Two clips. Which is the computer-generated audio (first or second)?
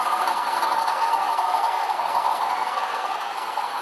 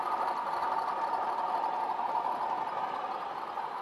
first